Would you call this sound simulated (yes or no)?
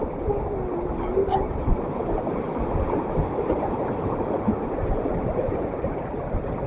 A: no